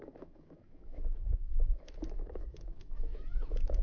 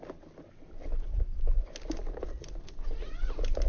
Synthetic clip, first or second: first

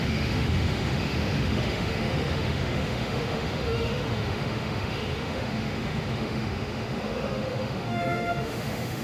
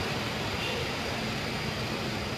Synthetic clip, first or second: first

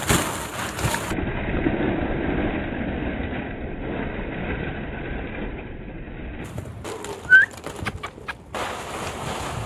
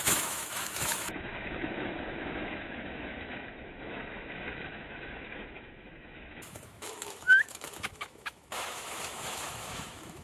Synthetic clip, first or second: second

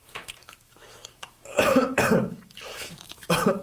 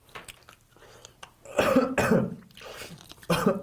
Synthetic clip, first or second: first